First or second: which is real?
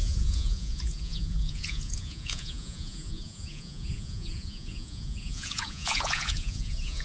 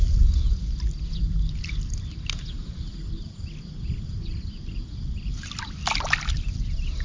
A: second